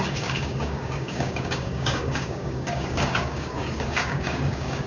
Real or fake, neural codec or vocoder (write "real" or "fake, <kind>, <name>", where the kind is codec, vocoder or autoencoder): fake, codec, DAC